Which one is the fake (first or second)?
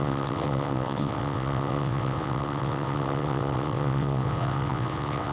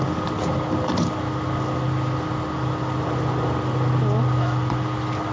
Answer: first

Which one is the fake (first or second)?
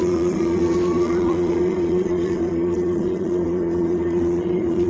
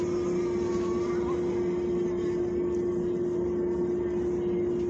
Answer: first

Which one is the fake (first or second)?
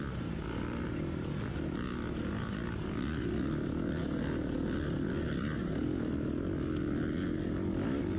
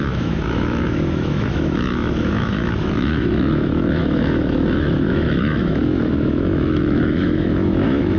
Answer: second